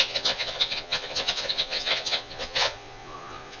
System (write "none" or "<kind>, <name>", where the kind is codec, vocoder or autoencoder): vocoder, Vocos